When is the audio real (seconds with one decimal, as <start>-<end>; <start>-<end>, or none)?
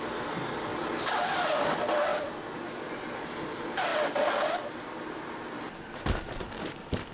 0.0-7.1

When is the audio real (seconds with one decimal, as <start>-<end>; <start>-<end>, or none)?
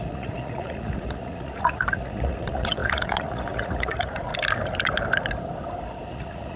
4.3-6.1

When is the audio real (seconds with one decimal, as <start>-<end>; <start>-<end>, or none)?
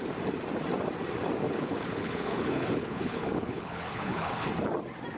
0.0-1.4; 4.5-5.2